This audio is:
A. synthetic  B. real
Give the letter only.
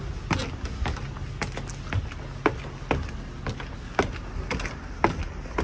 B